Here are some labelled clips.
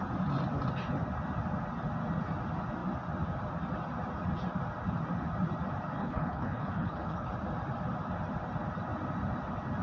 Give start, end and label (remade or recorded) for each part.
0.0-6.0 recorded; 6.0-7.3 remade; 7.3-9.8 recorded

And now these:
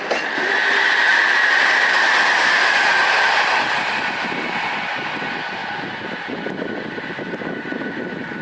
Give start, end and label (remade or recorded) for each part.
0.0-8.4 recorded

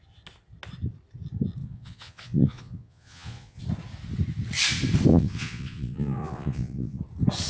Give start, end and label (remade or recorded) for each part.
0.0-1.6 recorded; 1.6-3.6 remade; 3.6-5.1 recorded; 5.1-7.0 remade; 7.0-7.5 recorded

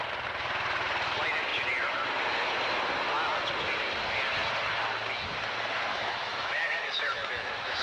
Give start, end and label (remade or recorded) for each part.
0.0-5.9 recorded; 5.9-7.8 remade

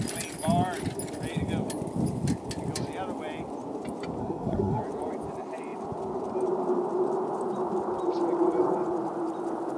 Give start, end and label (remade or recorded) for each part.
0.0-4.2 recorded; 4.2-4.8 remade; 4.8-9.8 recorded

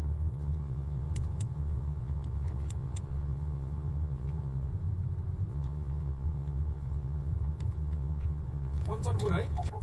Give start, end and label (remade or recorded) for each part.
0.0-4.7 remade; 4.7-5.5 recorded; 5.5-9.8 remade

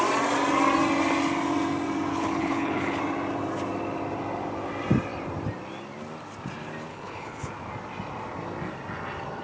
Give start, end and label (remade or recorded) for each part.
0.0-2.1 recorded; 2.1-3.0 remade; 3.0-6.9 recorded; 6.9-7.5 remade; 7.5-9.4 recorded

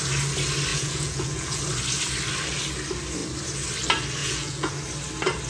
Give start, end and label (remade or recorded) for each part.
0.0-0.7 recorded; 0.7-1.6 remade; 1.6-4.2 recorded; 4.2-4.7 remade; 4.7-5.5 recorded